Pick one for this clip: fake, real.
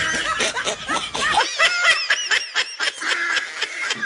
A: real